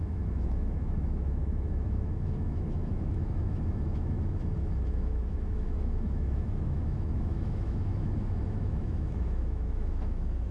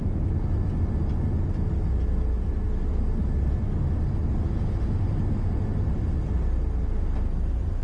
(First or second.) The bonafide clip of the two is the second